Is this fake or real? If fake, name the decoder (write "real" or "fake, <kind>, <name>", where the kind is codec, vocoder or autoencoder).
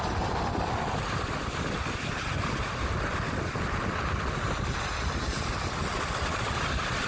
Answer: real